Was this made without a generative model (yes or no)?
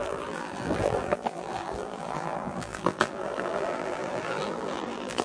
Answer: no